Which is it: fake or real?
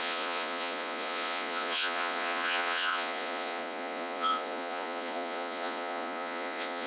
fake